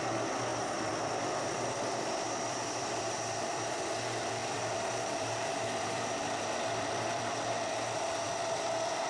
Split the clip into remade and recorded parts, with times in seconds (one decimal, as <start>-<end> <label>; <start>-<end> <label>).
0.0-0.5 recorded; 0.5-3.8 remade; 3.8-4.4 recorded; 4.4-8.3 remade; 8.3-9.1 recorded